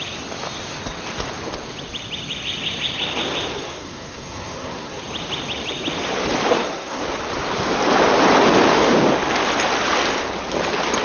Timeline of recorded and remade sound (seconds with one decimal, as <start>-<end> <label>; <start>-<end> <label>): 0.0-3.5 recorded; 3.5-5.0 remade; 5.0-6.5 recorded; 6.5-7.0 remade; 7.0-11.0 recorded